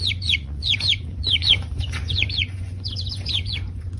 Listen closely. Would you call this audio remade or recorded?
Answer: remade